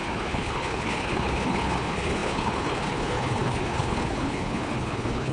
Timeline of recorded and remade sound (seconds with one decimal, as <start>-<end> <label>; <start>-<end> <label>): 0.0-5.3 remade